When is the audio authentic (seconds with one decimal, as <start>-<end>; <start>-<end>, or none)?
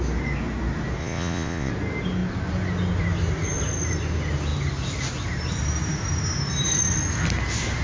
0.0-1.0; 1.7-7.8